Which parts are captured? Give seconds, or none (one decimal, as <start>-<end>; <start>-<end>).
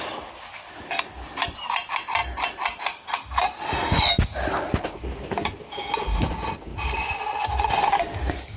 0.0-8.6